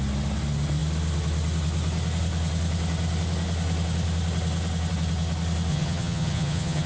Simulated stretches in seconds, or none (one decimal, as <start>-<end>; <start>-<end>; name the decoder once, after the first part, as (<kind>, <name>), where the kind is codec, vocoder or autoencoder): 5.7-6.9 (vocoder, HiFi-GAN)